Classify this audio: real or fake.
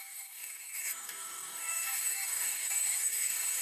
fake